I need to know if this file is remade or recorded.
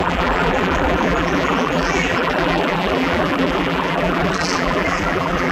remade